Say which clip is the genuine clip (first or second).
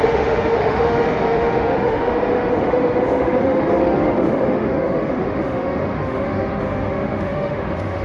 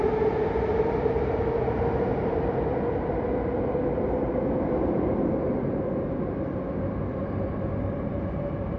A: second